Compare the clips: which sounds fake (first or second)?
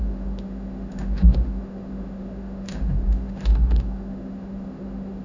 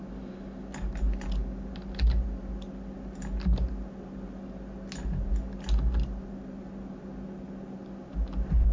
first